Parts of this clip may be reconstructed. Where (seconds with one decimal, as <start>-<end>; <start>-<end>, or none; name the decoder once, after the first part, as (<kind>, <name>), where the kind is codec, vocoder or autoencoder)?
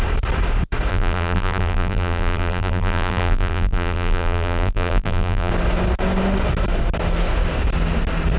0.9-5.5 (vocoder, BigVGAN v2)